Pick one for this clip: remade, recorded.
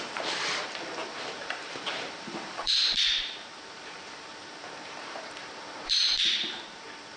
remade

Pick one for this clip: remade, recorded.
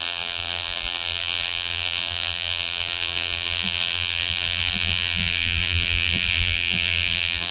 remade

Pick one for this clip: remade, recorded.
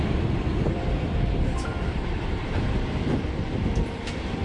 remade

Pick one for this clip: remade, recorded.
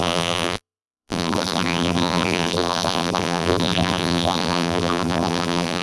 remade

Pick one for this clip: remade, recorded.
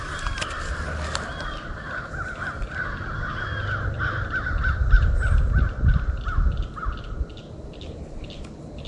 recorded